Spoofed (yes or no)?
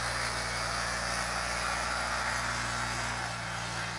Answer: no